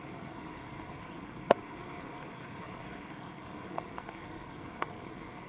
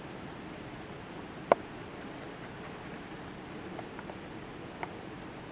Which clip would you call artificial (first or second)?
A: first